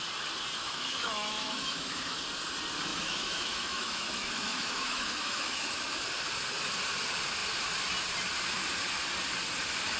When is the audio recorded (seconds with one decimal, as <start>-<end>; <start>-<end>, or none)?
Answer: 0.0-0.6; 2.2-2.9; 5.9-10.0